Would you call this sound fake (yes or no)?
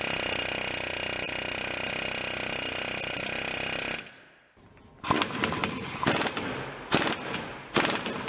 no